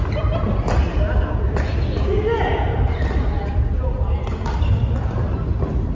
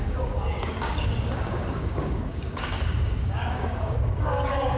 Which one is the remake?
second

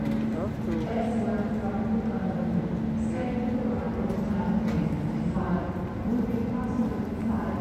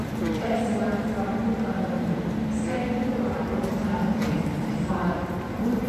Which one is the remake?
second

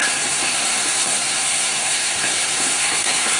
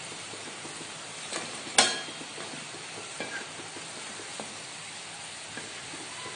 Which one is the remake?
first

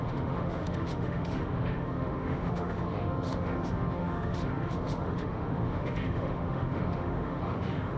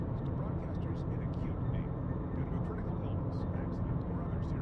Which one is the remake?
first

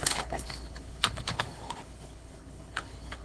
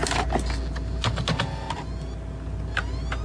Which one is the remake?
first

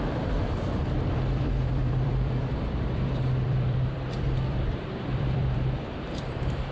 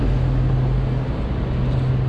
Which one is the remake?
first